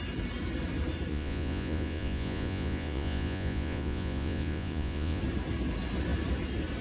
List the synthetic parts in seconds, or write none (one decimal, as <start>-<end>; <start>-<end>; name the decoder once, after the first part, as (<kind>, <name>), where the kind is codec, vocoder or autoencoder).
1.1-5.2 (vocoder, Vocos)